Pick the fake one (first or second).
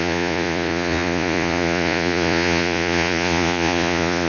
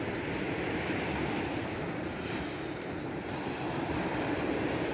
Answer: first